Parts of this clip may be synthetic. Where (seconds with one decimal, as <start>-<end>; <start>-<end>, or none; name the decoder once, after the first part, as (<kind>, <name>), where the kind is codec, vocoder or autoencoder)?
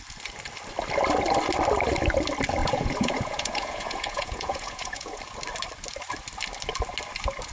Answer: 2.6-5.2 (vocoder, Vocos)